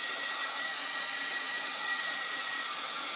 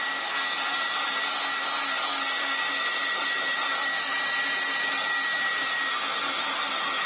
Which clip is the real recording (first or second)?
second